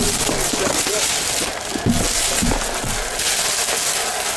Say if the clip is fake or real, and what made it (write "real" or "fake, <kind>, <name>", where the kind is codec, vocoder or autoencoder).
real